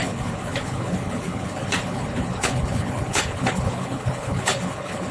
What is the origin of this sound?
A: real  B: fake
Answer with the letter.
B